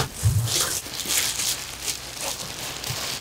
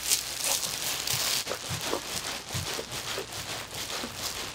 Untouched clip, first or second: second